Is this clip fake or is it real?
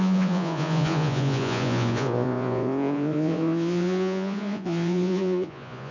fake